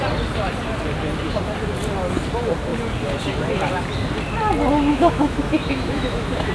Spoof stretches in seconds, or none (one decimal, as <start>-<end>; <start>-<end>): 4.9-6.5